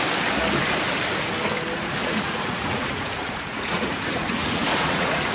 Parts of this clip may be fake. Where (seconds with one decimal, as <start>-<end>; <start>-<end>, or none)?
2.0-5.3